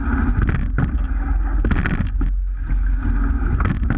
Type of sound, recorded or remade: recorded